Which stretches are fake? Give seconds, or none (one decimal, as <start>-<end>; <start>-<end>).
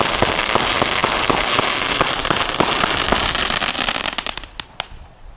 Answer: none